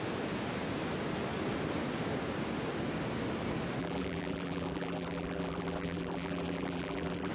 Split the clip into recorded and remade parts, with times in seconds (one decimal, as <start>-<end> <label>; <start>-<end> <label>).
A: 0.0-3.8 recorded; 3.8-7.3 remade